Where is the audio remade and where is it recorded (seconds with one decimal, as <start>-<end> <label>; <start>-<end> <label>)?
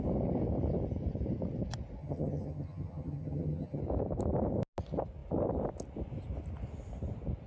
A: 0.0-2.0 recorded; 2.0-3.8 remade; 3.8-7.5 recorded